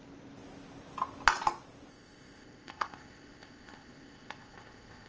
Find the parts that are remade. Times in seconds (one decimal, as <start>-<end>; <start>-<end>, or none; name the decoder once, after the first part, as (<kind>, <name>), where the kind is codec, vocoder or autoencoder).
1.9-5.1 (codec, ZipCodec)